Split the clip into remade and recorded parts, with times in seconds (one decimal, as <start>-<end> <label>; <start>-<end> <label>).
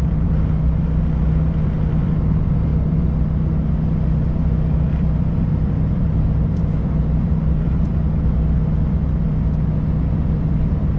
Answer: 0.0-2.7 remade; 2.7-4.8 recorded; 4.8-7.9 remade; 7.9-10.1 recorded; 10.1-11.0 remade